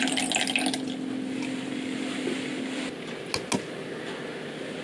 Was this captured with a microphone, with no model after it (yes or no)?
yes